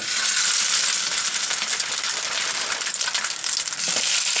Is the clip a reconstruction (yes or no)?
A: no